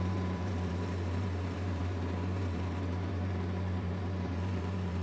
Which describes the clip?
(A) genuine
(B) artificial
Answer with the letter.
B